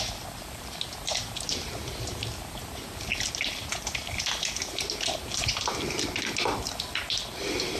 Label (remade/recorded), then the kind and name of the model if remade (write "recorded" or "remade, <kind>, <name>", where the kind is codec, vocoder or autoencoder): recorded